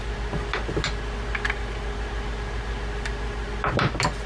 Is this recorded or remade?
recorded